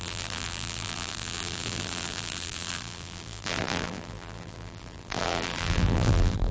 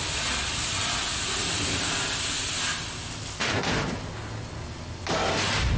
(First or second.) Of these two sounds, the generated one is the first